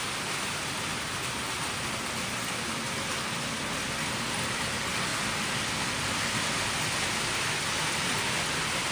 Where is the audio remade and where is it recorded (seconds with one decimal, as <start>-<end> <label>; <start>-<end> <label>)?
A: 0.0-8.9 recorded